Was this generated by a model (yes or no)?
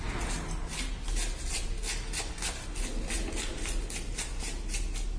no